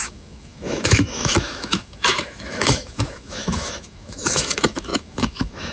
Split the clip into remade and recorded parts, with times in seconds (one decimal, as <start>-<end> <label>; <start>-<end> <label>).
0.0-5.7 remade